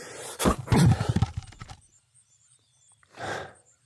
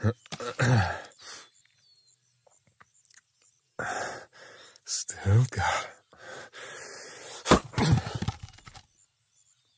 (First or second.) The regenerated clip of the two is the first